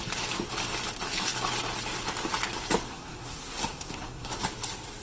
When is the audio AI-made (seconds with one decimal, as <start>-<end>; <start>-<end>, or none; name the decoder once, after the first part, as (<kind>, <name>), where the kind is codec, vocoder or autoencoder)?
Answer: 2.9-4.3 (codec, SNAC)